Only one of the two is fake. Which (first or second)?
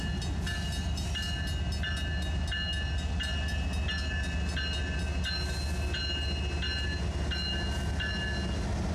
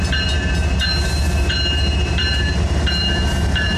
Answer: second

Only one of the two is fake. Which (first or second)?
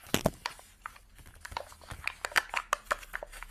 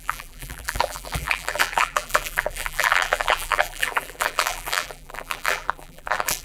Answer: second